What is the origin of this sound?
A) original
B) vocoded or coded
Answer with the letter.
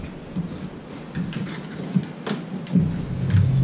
A